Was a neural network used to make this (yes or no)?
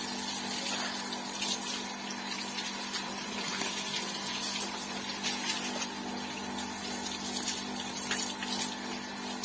no